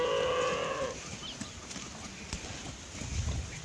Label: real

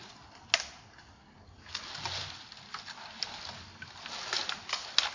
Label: real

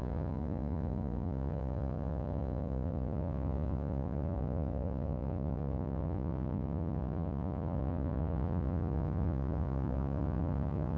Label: fake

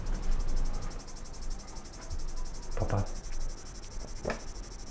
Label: real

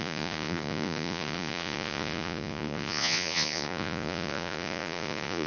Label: fake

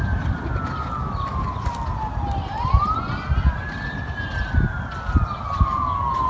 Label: real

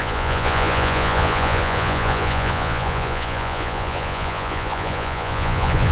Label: fake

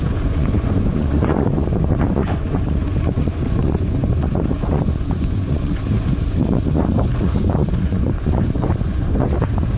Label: fake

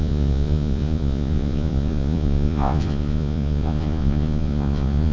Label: fake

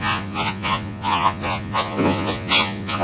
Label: fake